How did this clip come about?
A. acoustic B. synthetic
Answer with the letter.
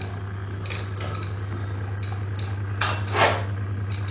A